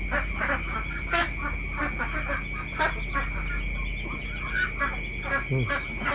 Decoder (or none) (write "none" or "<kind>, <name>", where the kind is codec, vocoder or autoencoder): none